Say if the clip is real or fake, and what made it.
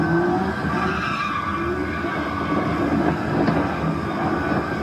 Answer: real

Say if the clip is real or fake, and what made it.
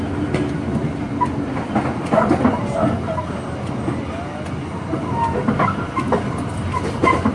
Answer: real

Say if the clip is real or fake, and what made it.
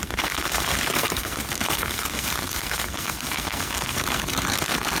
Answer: fake, codec, SNAC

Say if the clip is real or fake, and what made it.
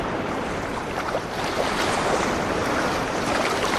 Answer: fake, vocoder, BigVGAN v2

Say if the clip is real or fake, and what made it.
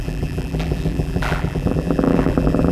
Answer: fake, vocoder, BigVGAN v2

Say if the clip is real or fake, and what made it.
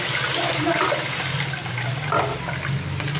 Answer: real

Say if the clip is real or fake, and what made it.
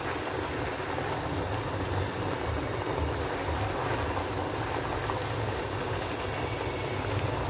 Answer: real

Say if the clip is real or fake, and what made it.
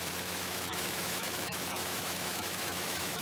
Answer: fake, autoencoder, DAC-VAE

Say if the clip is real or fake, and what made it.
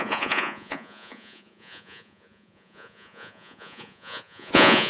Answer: fake, vocoder, Vocos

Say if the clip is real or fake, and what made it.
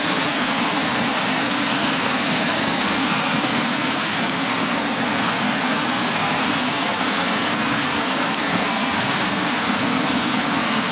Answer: fake, codec, SNAC